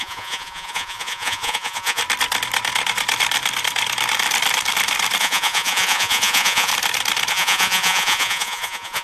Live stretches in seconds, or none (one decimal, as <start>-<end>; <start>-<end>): 2.0-5.2; 6.7-7.3